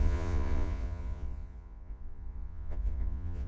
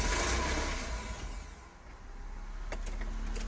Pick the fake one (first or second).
first